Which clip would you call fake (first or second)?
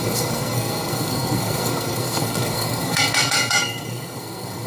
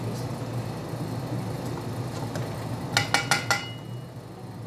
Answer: first